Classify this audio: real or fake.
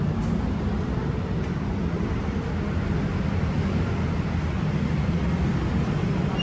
real